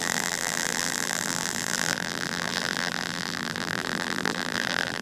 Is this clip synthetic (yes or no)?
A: yes